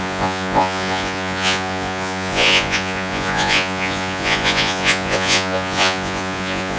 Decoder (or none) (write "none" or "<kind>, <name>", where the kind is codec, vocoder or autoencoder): vocoder, Vocos